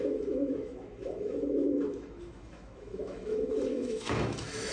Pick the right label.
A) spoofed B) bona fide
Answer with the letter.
A